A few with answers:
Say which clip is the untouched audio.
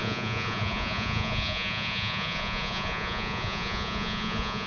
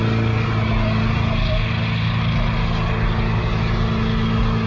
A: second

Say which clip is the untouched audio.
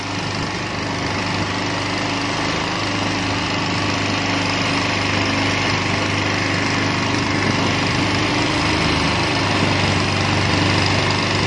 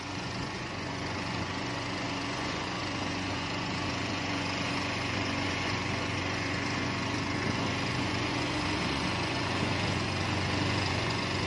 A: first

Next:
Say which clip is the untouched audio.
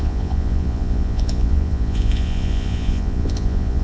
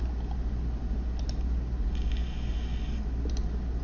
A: second